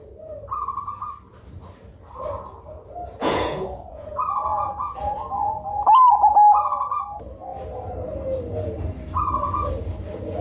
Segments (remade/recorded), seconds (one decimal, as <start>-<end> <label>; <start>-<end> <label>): 0.0-3.2 recorded; 3.2-4.1 remade; 4.1-4.5 recorded; 4.5-5.0 remade; 5.0-10.4 recorded